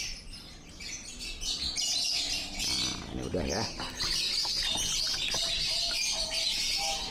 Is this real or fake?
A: real